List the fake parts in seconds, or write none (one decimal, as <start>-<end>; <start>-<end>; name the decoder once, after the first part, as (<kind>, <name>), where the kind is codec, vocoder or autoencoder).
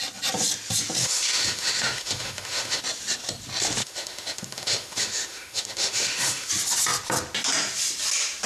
1.0-2.8 (autoencoder, DAC-VAE); 3.8-6.5